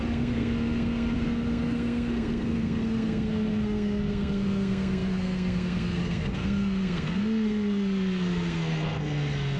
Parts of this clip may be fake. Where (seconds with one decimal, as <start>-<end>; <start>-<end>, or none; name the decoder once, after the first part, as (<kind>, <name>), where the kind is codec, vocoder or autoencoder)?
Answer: 0.0-9.6 (codec, SNAC)